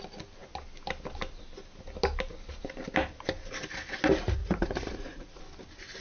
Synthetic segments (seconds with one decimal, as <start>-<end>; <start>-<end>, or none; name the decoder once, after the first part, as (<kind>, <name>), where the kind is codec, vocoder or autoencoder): 4.4-5.4 (vocoder, Vocos)